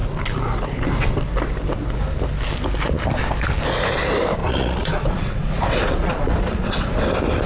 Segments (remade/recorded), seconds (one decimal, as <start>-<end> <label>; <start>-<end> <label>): 0.0-4.4 recorded; 4.4-7.0 remade; 7.0-7.5 recorded